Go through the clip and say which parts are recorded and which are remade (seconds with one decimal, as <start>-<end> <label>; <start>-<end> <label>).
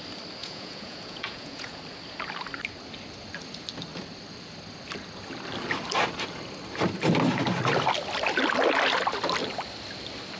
0.0-0.4 recorded; 0.4-1.8 remade; 1.8-10.4 recorded